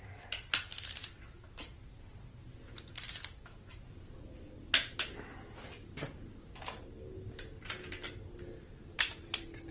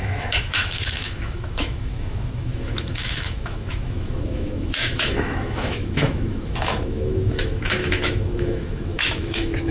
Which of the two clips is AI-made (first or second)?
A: second